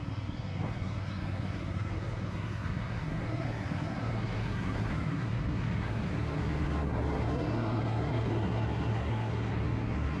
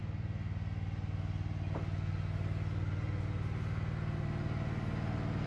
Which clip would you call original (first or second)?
second